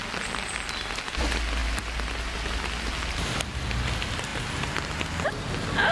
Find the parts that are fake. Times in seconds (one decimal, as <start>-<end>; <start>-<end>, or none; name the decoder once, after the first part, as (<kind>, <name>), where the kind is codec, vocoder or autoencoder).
none